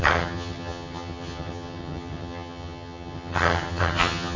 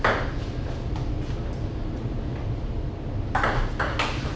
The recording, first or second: second